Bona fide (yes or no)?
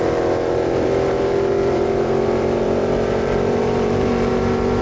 no